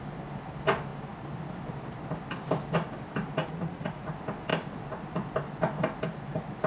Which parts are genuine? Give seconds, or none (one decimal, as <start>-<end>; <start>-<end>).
0.0-3.4; 4.1-6.7